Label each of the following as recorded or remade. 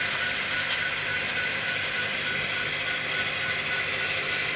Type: recorded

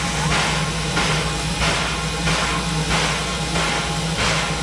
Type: recorded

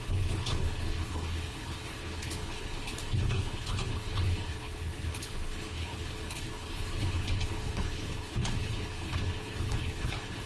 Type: remade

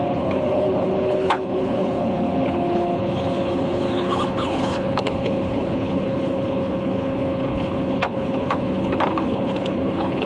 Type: remade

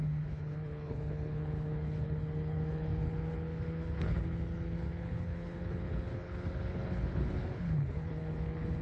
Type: remade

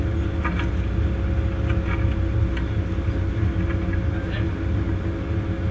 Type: recorded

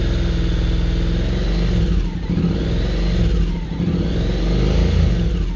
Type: recorded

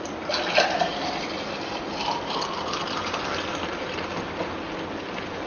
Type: recorded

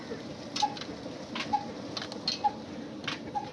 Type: recorded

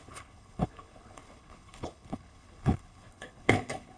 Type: remade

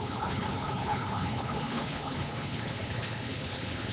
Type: remade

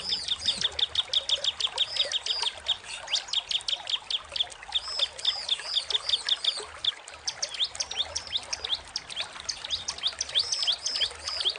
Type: recorded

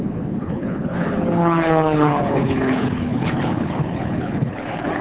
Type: remade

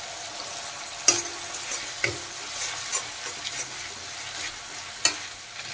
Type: recorded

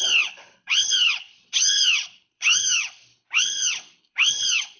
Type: remade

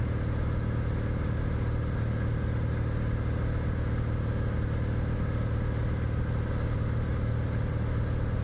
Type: recorded